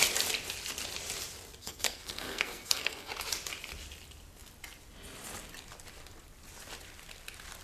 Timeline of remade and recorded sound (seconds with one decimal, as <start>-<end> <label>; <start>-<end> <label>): 0.0-1.6 recorded; 1.6-3.1 remade; 3.1-7.6 recorded